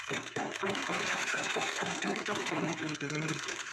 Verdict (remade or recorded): remade